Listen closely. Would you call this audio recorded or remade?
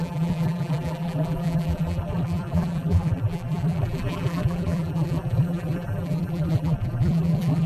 remade